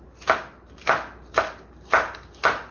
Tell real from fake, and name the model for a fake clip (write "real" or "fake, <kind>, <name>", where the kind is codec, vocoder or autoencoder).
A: real